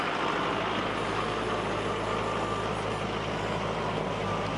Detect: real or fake real